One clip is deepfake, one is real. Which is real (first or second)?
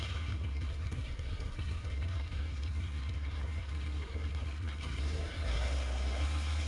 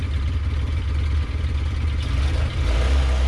second